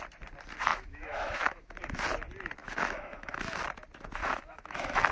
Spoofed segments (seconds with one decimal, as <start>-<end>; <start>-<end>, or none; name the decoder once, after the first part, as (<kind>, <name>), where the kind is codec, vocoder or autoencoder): 0.7-1.7 (autoencoder, DAC-VAE); 2.6-3.6; 4.2-5.1